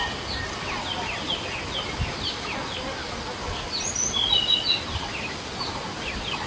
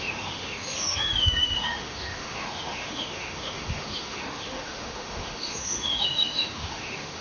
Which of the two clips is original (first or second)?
first